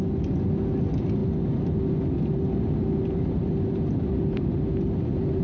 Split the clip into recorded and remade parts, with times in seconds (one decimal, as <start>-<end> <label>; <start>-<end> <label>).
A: 0.0-5.4 recorded